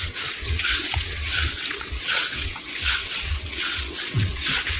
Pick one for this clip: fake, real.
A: fake